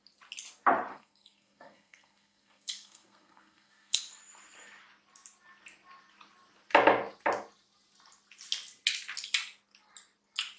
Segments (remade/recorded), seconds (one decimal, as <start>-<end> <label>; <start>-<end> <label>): 0.0-0.9 recorded; 0.9-4.0 remade; 4.0-10.6 recorded

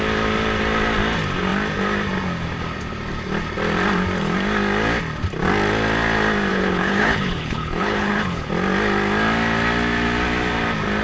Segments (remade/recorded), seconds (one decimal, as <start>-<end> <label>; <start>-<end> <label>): 0.0-6.5 recorded; 6.5-8.5 remade; 8.5-11.0 recorded